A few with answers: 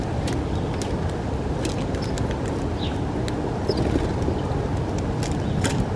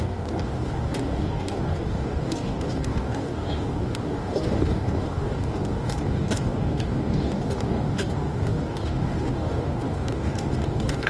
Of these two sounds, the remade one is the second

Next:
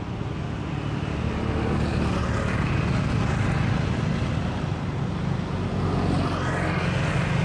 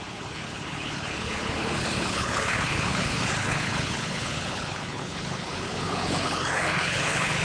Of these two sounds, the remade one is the second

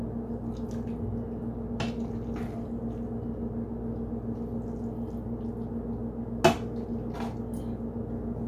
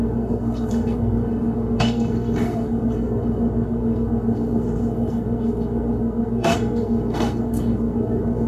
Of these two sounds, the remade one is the second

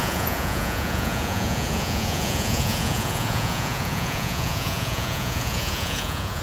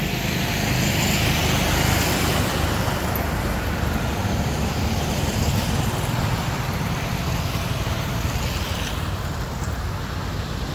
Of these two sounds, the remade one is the first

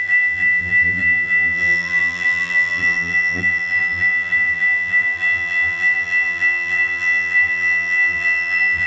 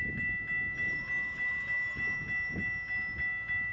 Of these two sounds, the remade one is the first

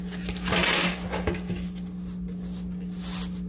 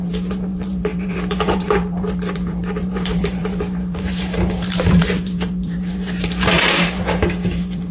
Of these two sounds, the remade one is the second